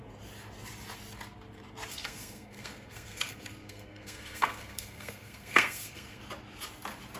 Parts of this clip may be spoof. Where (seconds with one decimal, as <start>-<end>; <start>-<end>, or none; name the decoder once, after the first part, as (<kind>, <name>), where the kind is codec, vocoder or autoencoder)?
1.9-6.2 (codec, SNAC)